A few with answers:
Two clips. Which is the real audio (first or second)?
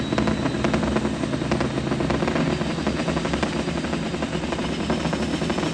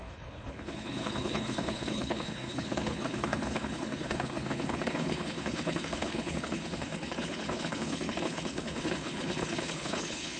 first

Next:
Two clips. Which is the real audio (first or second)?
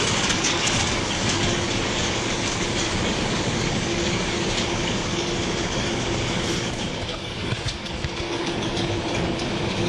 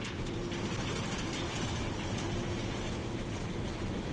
second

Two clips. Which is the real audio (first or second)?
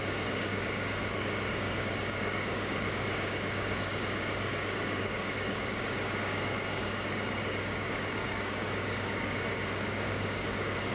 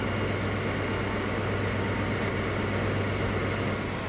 second